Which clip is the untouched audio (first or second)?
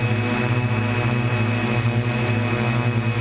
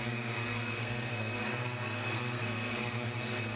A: first